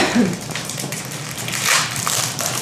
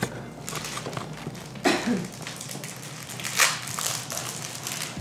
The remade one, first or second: first